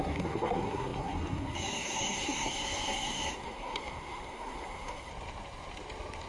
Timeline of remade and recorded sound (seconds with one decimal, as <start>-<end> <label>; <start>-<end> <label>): 0.0-5.1 remade; 5.1-6.3 recorded